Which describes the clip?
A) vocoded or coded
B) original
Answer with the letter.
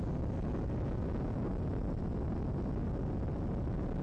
B